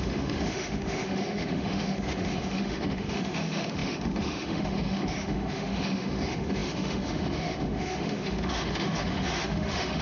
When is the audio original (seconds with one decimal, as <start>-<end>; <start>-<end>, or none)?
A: none